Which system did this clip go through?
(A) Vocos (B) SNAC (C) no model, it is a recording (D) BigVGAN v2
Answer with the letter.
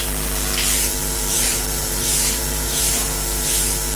D